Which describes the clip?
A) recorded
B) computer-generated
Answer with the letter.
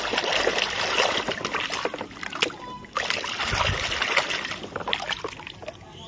A